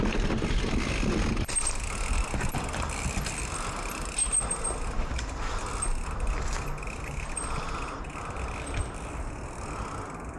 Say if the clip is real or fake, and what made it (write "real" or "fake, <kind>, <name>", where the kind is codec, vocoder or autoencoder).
real